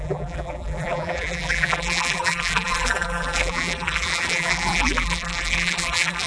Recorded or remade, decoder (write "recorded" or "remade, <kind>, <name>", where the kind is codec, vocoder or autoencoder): remade, vocoder, BigVGAN v2